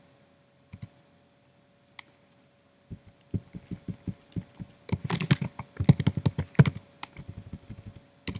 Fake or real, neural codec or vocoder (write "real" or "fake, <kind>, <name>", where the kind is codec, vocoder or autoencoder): real